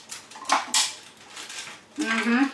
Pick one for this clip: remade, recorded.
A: recorded